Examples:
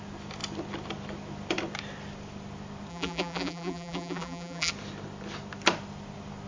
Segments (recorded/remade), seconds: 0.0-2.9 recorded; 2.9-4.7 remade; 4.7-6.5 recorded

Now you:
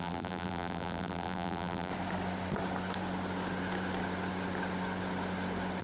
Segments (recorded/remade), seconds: 0.0-1.9 remade; 1.9-5.8 recorded

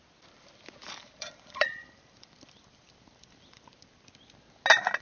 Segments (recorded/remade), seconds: 0.0-0.8 recorded; 0.8-3.8 remade; 3.8-5.0 recorded

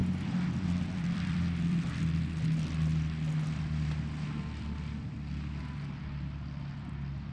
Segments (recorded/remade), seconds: 0.0-2.0 remade; 2.0-7.3 recorded

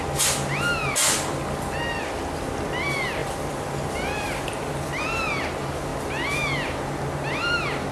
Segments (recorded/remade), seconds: 0.0-3.2 recorded; 3.2-4.9 remade; 4.9-7.9 recorded

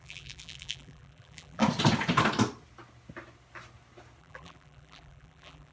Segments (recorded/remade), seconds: 0.0-1.6 remade; 1.6-4.2 recorded; 4.2-5.7 remade

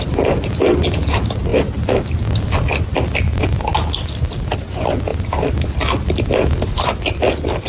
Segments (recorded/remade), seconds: 0.0-5.1 recorded; 5.1-5.7 remade; 5.7-7.7 recorded

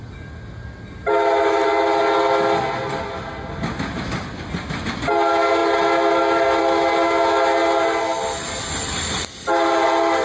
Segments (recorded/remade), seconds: 0.0-10.2 recorded